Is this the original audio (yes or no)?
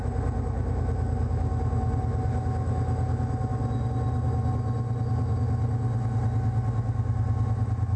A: yes